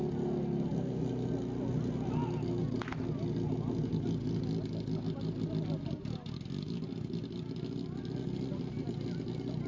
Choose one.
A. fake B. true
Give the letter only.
B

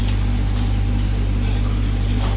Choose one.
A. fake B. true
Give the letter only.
B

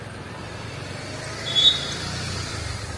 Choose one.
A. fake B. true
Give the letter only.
B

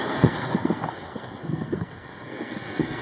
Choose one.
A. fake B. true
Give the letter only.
A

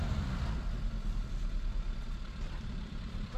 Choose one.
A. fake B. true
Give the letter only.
A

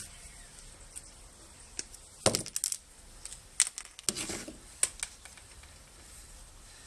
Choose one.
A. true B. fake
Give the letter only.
A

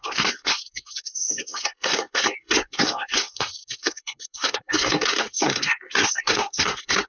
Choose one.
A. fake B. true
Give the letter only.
A